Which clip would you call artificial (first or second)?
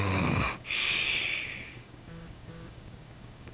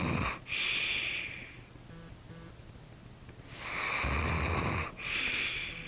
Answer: first